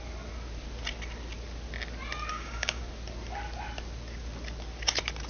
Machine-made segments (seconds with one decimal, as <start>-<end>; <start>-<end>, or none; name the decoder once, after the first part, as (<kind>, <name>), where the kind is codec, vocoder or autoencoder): 2.3-2.8 (codec, DAC)